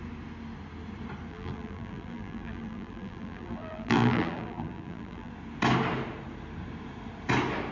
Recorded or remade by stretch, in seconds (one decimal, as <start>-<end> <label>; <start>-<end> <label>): 0.0-1.3 recorded; 1.3-5.3 remade; 5.3-7.7 recorded